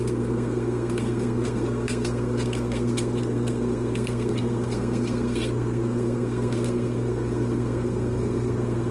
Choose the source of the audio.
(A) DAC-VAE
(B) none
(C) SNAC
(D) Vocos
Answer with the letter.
C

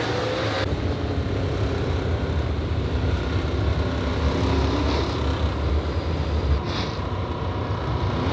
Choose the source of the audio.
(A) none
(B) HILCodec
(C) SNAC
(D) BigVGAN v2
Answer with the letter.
A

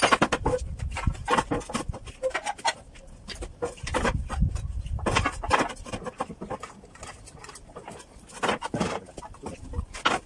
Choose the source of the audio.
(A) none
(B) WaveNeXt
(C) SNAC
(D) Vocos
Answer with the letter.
A